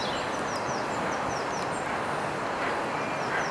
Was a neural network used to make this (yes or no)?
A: no